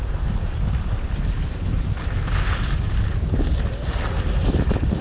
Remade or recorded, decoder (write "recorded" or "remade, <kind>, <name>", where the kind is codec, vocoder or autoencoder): recorded